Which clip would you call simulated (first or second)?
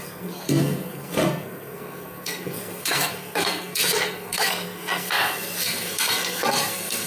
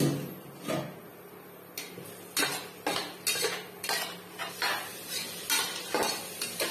first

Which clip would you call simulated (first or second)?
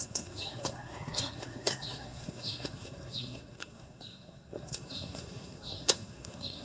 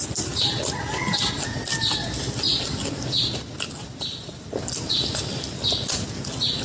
first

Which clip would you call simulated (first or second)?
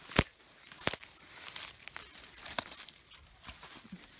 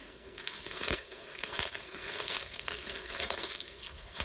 second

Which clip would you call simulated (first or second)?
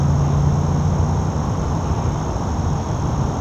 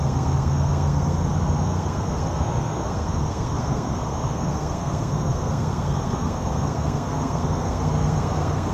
second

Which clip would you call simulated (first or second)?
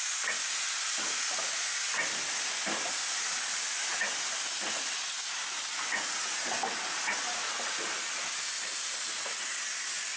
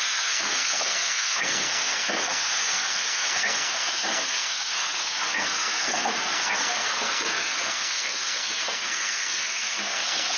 second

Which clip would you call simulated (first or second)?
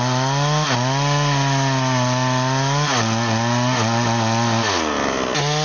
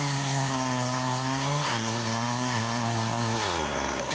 second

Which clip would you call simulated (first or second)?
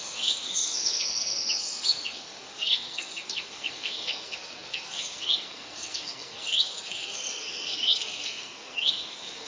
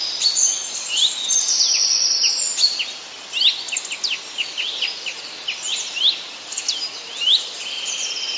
first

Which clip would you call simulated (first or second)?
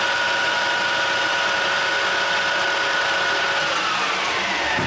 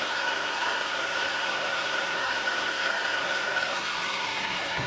second